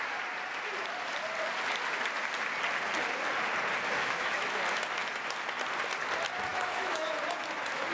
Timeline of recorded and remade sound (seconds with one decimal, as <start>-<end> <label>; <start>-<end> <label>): 0.0-4.0 recorded; 4.0-4.6 remade; 4.6-6.5 recorded; 6.5-7.2 remade; 7.2-7.9 recorded